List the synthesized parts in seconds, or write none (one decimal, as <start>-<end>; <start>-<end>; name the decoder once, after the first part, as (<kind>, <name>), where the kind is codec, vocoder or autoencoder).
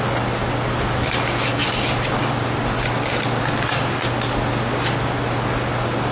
none